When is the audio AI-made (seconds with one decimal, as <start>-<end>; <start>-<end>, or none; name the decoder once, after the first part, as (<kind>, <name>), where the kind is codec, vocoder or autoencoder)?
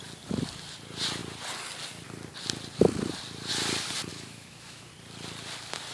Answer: 4.1-4.9 (autoencoder, DAC-VAE)